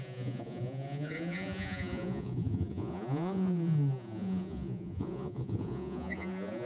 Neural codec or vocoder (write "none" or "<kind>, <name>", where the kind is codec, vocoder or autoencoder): vocoder, Vocos